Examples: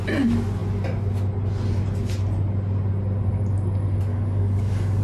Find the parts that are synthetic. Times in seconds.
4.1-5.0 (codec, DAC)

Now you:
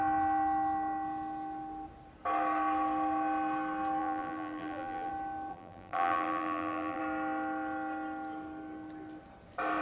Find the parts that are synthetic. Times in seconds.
4.0-5.1 (vocoder, BigVGAN v2); 5.5-7.0